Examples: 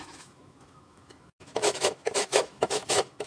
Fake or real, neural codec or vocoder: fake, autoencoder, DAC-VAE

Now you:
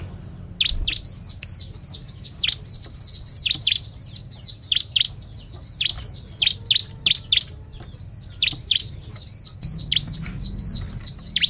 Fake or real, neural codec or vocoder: real